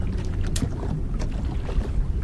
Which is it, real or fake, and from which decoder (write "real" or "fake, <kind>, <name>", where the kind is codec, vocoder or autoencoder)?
real